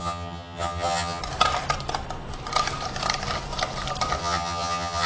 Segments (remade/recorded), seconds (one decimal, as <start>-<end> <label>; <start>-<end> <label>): 0.0-1.2 remade; 1.2-4.2 recorded; 4.2-5.1 remade